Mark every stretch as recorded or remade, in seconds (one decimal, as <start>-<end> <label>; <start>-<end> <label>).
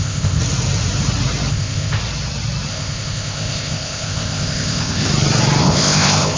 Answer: 0.0-0.4 remade; 0.4-1.5 recorded; 1.5-2.0 remade; 2.0-2.7 recorded; 2.7-5.1 remade; 5.1-5.6 recorded; 5.6-6.4 remade